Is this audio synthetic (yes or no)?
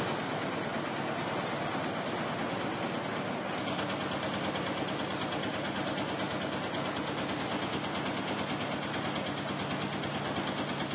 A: no